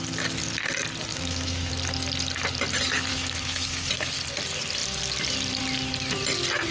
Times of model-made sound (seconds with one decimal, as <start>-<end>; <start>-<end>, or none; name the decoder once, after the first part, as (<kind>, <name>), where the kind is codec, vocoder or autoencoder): 1.1-1.7 (autoencoder, DAC-VAE); 3.1-3.9